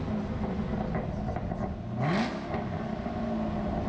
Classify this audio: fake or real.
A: real